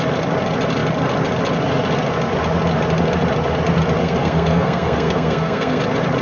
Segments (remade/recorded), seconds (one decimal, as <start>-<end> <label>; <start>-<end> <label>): 0.0-4.0 recorded; 4.0-5.8 remade; 5.8-6.2 recorded